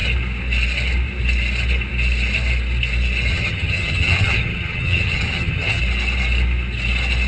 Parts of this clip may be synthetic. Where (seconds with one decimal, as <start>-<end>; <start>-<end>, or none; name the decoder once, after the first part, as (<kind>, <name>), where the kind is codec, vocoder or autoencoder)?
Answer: 3.3-5.8 (vocoder, HiFi-GAN)